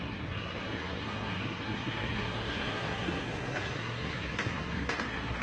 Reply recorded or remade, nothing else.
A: remade